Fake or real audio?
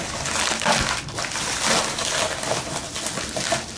real